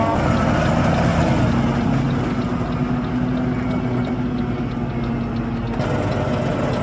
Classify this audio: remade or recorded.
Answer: recorded